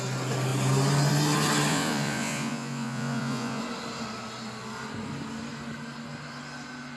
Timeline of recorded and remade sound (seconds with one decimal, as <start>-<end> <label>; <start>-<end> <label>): 0.0-1.7 recorded; 1.7-3.6 remade; 3.6-7.0 recorded